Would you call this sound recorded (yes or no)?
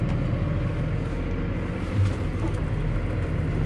yes